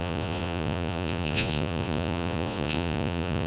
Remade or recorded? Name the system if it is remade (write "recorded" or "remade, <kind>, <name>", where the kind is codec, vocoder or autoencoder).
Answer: remade, vocoder, Vocos